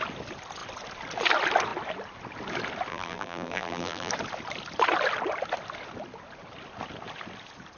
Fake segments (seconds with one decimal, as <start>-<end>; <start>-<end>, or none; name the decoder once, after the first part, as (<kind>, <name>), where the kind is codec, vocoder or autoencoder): 2.9-4.1 (vocoder, BigVGAN v2)